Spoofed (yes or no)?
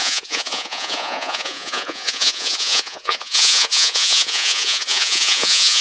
yes